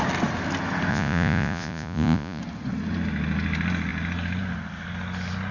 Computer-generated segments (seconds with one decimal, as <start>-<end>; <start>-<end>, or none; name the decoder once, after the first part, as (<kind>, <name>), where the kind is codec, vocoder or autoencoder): 0.9-2.4 (vocoder, Vocos)